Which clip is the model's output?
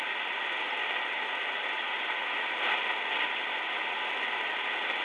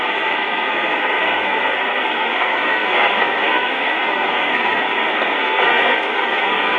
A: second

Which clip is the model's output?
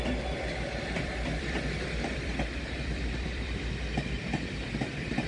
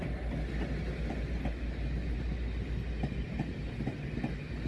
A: first